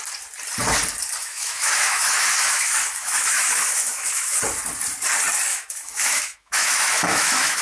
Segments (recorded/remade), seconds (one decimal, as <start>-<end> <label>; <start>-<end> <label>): 0.0-1.2 recorded; 1.2-4.4 remade; 4.4-5.5 recorded; 5.5-7.6 remade